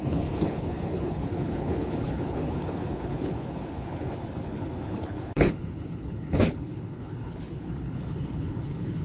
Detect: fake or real fake